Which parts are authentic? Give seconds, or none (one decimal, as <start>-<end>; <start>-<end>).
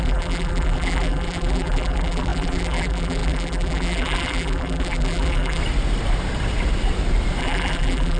5.6-7.4